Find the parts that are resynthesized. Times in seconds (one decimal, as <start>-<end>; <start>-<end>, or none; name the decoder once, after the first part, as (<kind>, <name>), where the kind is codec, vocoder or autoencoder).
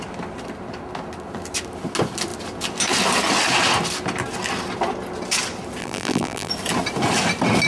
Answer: 5.8-6.5 (vocoder, BigVGAN v2)